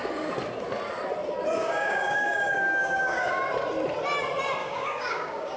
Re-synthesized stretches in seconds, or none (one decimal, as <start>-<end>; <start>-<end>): 1.6-3.4; 4.6-5.6